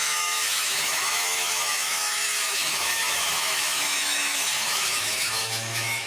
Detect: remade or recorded remade